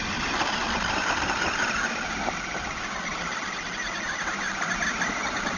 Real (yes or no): yes